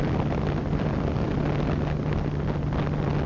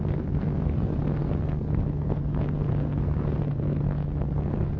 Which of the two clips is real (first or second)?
first